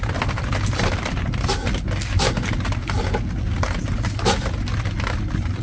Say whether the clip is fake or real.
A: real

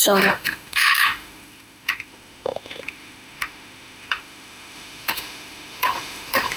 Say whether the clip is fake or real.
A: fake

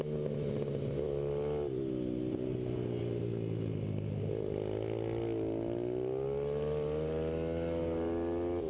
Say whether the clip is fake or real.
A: real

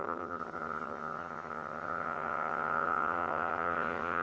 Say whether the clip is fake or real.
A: fake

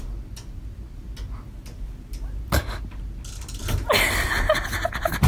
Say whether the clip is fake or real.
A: real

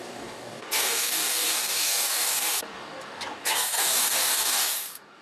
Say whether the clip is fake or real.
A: fake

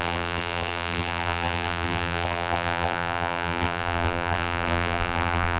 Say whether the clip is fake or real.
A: fake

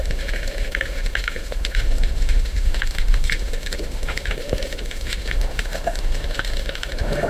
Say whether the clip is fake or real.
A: fake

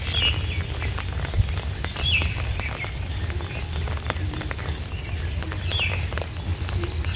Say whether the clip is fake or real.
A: real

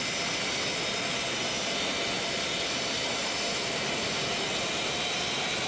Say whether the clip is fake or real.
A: real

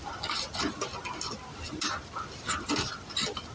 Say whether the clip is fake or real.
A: real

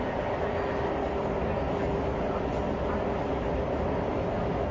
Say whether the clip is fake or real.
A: real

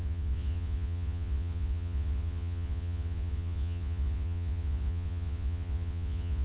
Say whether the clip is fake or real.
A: fake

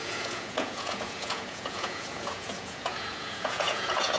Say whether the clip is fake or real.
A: fake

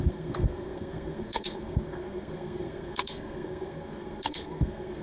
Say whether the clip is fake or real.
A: fake